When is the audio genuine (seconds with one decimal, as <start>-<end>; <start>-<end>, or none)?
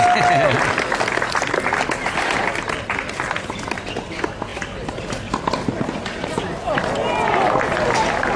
0.0-8.4